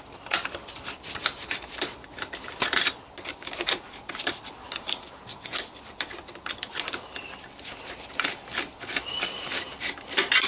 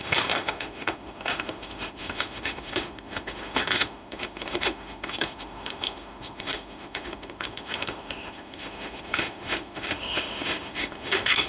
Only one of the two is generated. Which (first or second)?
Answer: second